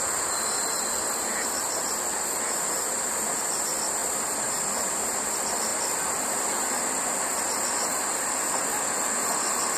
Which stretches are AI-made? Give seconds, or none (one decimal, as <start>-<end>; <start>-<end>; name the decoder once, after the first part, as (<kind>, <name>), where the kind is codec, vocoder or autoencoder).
none